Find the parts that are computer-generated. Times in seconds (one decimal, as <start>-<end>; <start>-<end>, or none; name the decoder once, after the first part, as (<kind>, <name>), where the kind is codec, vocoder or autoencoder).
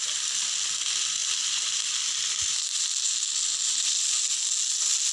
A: none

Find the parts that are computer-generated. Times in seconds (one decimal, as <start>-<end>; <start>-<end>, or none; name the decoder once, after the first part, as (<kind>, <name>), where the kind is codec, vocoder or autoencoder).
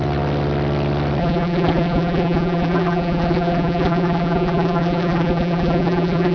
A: 1.2-6.3 (vocoder, BigVGAN v2)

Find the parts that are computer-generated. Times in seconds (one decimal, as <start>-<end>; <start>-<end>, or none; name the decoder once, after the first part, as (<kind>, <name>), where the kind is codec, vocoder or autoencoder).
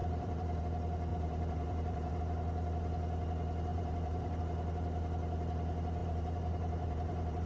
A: 0.0-0.6 (vocoder, BigVGAN v2); 1.1-2.2; 3.7-4.4; 6.0-7.5